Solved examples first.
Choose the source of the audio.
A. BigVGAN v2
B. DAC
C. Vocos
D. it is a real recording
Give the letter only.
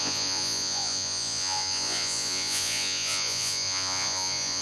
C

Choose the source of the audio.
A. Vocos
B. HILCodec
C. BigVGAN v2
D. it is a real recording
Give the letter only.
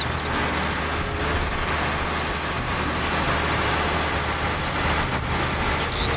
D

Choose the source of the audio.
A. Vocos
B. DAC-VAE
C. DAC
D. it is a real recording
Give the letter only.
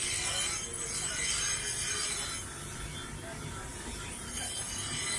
D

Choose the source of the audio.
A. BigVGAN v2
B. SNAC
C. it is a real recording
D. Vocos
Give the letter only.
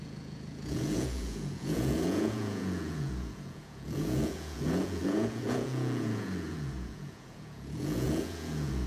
D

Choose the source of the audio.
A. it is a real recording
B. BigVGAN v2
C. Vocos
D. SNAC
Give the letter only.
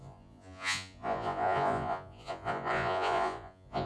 C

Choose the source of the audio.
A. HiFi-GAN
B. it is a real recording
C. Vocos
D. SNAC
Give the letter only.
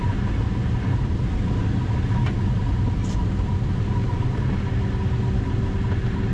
B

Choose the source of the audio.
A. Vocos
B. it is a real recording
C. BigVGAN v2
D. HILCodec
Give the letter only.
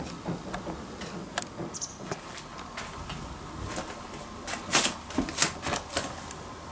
B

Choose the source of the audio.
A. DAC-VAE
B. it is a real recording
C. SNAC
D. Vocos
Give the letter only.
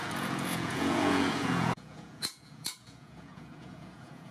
D